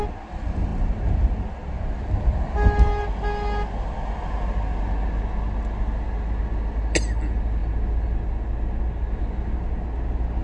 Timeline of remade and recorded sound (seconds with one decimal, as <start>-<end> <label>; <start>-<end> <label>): 0.0-10.4 recorded